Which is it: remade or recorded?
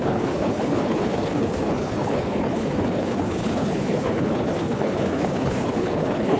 remade